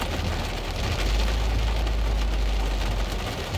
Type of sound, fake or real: real